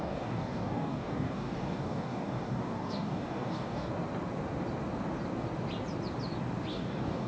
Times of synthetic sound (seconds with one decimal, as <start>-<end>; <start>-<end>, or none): 0.0-3.9; 6.7-7.3